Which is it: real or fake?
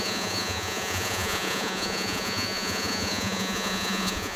fake